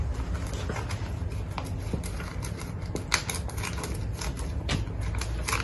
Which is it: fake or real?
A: real